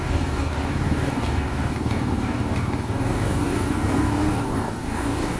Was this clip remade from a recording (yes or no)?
yes